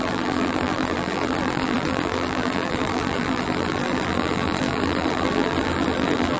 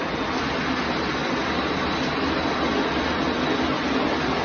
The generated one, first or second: first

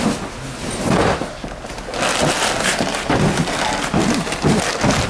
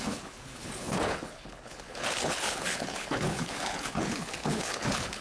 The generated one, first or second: second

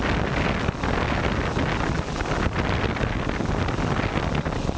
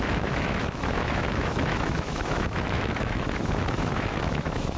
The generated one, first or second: second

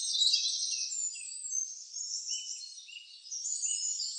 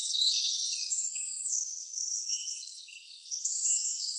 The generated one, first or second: second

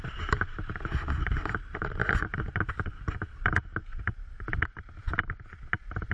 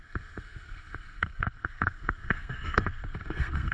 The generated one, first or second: second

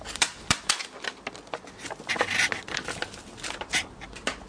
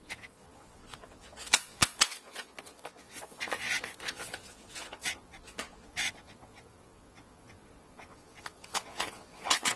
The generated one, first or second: second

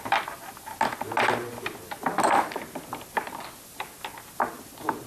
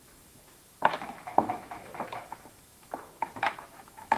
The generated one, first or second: second